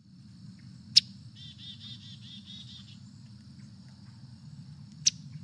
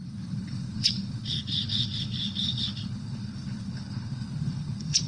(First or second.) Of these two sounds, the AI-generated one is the second